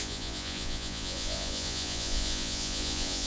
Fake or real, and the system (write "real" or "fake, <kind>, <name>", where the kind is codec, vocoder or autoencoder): fake, vocoder, Vocos